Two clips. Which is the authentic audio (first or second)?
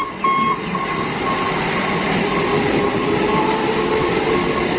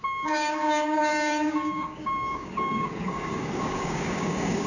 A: first